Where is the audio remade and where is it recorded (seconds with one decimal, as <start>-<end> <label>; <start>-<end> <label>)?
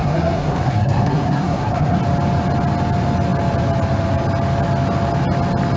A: 0.0-2.0 remade; 2.0-5.8 recorded